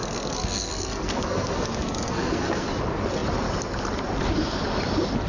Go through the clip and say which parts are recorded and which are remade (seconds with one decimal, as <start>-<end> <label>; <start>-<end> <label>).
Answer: 0.0-2.7 remade; 2.7-5.3 recorded